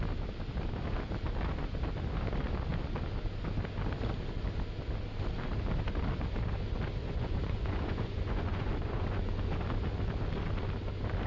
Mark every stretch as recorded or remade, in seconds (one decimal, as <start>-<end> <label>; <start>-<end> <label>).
0.0-7.0 recorded; 7.0-9.6 remade; 9.6-11.3 recorded